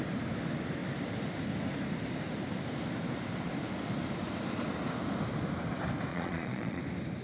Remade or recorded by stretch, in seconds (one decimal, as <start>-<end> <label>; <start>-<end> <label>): 0.0-6.1 recorded; 6.1-6.8 remade; 6.8-7.2 recorded